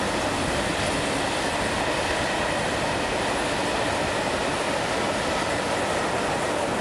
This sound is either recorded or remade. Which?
recorded